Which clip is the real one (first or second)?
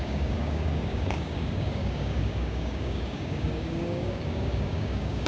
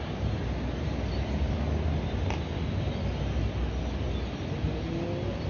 second